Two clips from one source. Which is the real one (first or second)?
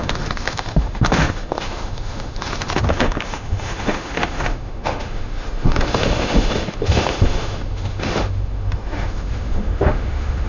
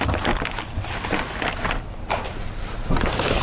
second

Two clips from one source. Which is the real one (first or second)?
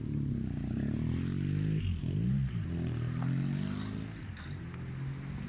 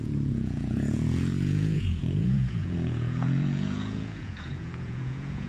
first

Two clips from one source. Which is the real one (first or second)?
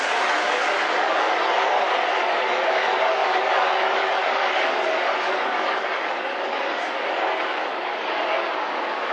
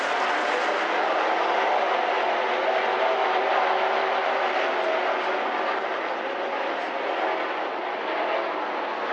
second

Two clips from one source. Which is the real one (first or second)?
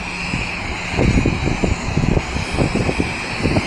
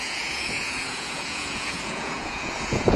first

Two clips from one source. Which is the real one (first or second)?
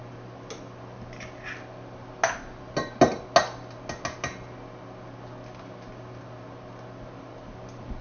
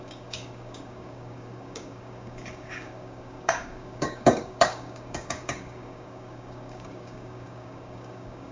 first